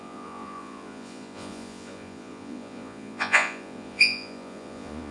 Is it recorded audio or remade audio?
remade